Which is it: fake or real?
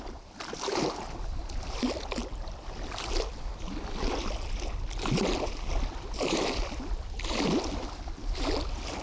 real